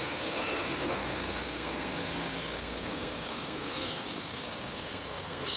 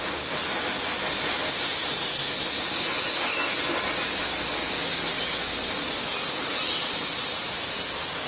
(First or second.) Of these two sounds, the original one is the second